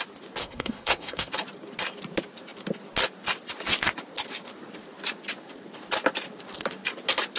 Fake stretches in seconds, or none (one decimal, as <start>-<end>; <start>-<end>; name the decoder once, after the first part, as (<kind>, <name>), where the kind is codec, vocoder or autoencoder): 0.4-1.3 (codec, SNAC)